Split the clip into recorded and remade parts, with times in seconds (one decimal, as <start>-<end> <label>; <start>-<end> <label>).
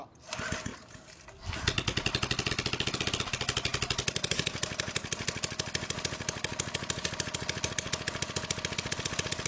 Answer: 0.0-9.5 recorded